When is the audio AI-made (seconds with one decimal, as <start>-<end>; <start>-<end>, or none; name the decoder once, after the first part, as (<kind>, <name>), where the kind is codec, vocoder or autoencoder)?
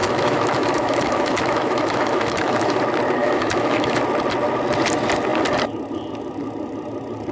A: 0.0-2.8 (autoencoder, DAC-VAE); 3.2-4.0